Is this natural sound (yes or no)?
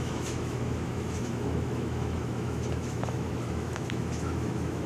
no